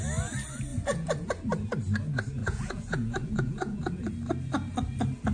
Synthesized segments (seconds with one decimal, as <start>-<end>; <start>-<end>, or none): 0.7-1.3; 2.4-4.0